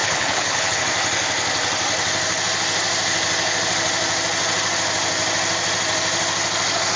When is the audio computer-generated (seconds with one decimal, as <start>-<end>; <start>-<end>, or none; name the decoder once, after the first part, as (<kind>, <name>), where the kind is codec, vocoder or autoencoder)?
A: 0.0-0.8 (codec, HILCodec)